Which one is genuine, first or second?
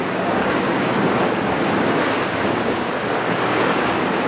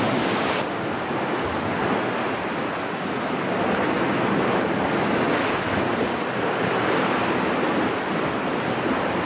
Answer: second